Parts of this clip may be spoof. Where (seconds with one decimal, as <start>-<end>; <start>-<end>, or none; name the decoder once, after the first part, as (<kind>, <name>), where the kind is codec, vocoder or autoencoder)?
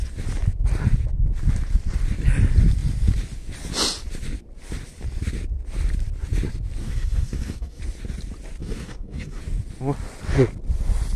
6.8-7.8 (codec, DAC); 8.6-9.4